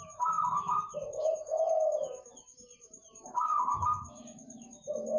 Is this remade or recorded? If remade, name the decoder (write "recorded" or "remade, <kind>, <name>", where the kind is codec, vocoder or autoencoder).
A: remade, autoencoder, DAC-VAE